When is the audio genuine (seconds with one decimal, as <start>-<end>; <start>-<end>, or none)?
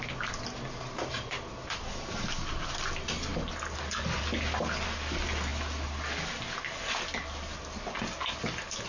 0.0-8.9